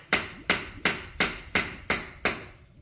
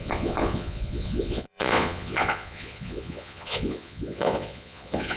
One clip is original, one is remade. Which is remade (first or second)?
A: second